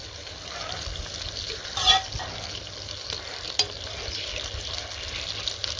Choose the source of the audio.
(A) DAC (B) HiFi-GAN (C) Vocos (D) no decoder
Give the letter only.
D